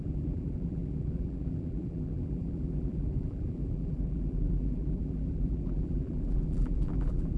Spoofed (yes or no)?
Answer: yes